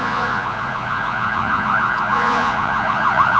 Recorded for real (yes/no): no